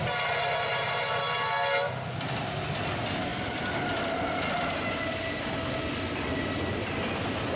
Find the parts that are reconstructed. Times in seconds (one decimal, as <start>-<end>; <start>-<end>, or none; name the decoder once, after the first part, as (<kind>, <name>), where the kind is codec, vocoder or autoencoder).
none